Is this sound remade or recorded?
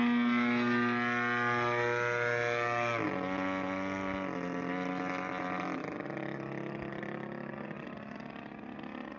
recorded